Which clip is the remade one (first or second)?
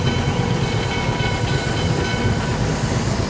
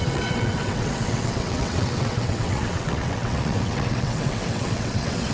second